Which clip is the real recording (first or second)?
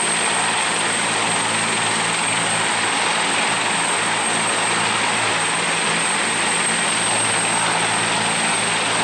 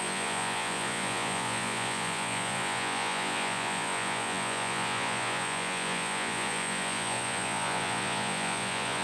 first